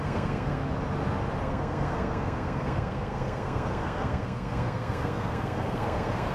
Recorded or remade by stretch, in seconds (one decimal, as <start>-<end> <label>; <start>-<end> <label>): 0.0-0.6 remade; 0.6-1.4 recorded; 1.4-6.3 remade